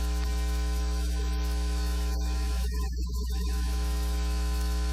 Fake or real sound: fake